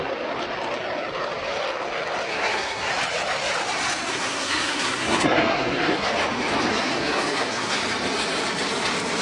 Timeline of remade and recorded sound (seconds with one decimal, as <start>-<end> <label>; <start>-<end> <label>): 0.0-2.3 recorded; 2.3-2.9 remade; 2.9-4.1 recorded; 4.1-6.1 remade; 6.1-6.7 recorded; 6.7-7.8 remade; 7.8-9.2 recorded